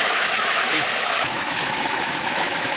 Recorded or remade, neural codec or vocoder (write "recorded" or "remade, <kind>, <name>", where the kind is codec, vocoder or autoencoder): remade, autoencoder, DAC-VAE